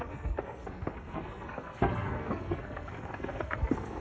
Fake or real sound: fake